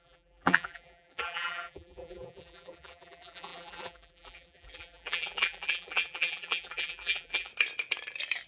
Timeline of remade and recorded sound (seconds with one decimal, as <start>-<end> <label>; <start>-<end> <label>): 0.0-7.5 remade; 7.5-8.5 recorded